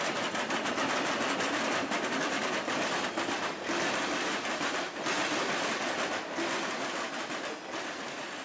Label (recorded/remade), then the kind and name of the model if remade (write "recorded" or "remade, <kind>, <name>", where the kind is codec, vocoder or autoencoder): recorded